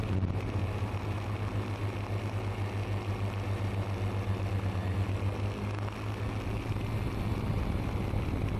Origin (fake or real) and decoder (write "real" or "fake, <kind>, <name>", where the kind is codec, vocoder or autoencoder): real